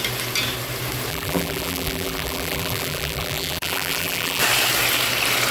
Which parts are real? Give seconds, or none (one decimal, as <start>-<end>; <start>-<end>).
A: 0.0-1.1; 4.4-5.5